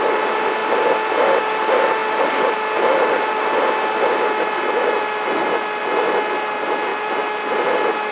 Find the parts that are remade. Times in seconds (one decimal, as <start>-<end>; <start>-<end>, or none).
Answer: none